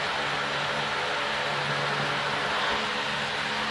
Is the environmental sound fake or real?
real